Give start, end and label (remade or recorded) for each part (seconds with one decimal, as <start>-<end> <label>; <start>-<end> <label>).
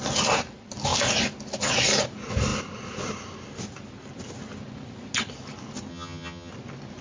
0.0-5.9 recorded; 5.9-6.5 remade; 6.5-7.0 recorded